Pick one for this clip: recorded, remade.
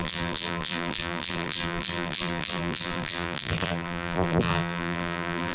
remade